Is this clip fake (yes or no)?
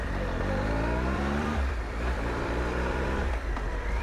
yes